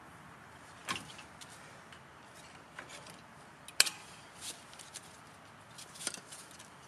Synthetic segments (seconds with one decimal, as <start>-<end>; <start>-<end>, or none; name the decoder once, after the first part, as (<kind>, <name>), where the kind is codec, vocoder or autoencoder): 0.0-0.8 (vocoder, BigVGAN v2); 1.4-2.9; 6.5-6.9